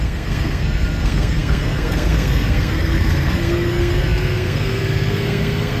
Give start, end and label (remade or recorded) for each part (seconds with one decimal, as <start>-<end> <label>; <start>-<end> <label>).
0.0-5.8 remade